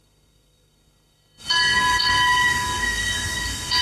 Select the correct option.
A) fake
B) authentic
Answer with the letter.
A